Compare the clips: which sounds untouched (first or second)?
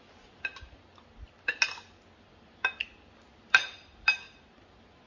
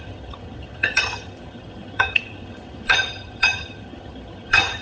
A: first